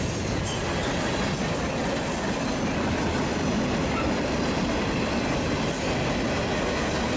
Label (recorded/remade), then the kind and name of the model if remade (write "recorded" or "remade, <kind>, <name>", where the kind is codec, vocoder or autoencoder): recorded